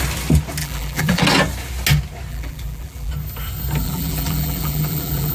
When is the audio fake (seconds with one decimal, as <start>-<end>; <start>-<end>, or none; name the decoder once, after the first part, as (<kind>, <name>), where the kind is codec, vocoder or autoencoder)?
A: 0.6-1.2 (vocoder, BigVGAN v2); 2.3-3.1; 3.8-5.3